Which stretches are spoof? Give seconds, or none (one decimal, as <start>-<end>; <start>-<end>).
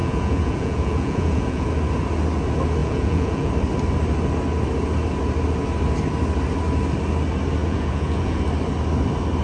0.0-1.7; 2.8-3.5; 7.6-8.4